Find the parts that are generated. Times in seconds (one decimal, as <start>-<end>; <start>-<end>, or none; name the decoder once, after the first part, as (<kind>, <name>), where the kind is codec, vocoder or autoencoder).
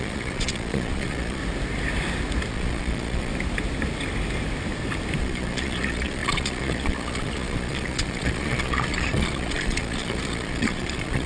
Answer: 0.0-1.4 (vocoder, Vocos); 2.5-3.3; 5.2-11.3